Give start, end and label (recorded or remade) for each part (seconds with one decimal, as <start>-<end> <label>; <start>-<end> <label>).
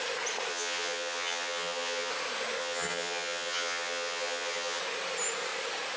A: 0.0-0.5 recorded; 0.5-2.1 remade; 2.1-2.6 recorded; 2.6-4.8 remade; 4.8-6.0 recorded